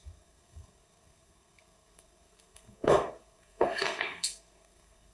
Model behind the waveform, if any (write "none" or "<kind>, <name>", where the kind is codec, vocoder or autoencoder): codec, SNAC